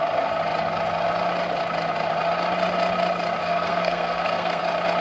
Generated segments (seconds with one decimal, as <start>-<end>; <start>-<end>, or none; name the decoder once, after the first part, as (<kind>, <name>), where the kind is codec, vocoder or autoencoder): 3.4-4.6 (codec, SNAC)